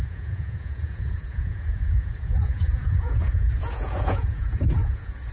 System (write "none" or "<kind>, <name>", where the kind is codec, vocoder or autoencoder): vocoder, Vocos